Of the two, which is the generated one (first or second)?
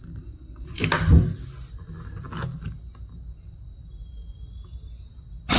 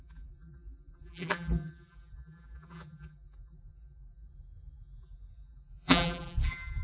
second